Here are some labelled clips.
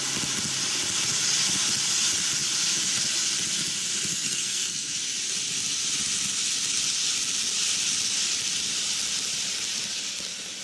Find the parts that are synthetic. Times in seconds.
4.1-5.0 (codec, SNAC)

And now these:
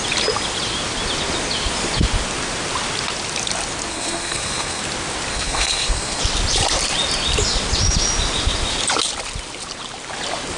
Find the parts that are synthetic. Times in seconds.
3.9-4.8 (codec, SNAC); 5.3-6.2

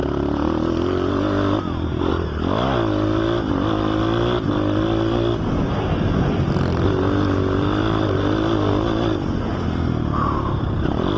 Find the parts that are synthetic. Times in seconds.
none

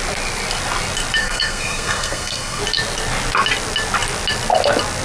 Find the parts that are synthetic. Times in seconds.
1.2-2.6 (codec, SNAC)

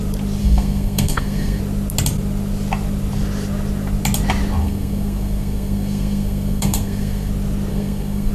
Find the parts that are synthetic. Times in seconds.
0.4-1.6 (codec, SNAC); 4.6-7.3; 7.7-8.3